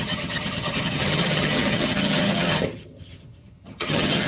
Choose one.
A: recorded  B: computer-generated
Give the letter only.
B